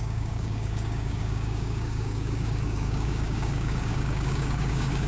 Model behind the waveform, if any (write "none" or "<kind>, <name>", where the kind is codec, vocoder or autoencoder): codec, DAC